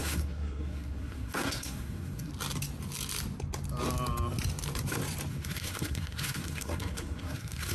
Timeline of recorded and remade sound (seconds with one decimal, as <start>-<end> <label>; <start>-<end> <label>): 0.0-2.3 remade; 2.3-5.3 recorded; 5.3-7.7 remade